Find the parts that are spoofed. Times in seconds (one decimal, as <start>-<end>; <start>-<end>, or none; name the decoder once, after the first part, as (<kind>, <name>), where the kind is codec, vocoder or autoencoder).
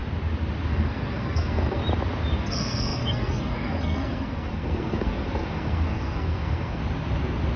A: 0.7-1.8 (codec, SNAC); 2.4-6.8